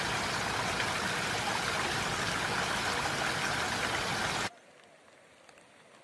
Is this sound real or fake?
real